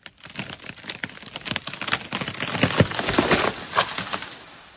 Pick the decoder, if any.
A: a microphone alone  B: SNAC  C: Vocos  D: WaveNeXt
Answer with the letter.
A